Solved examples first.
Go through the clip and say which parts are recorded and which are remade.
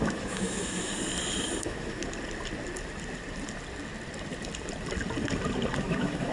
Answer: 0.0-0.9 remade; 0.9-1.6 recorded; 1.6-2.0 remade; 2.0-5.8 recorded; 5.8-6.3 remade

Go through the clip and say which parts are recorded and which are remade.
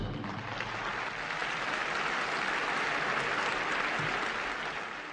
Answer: 0.0-5.1 recorded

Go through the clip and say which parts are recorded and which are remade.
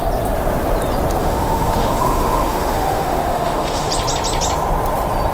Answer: 0.0-1.2 recorded; 1.2-3.9 remade; 3.9-5.3 recorded